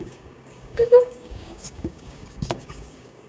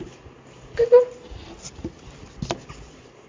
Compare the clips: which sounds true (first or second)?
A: second